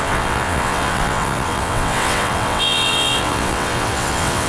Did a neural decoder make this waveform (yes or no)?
yes